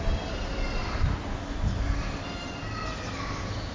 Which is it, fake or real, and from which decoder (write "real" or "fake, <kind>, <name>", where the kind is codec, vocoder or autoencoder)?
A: real